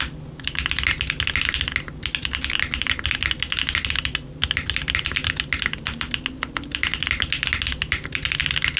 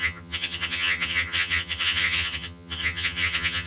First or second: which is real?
first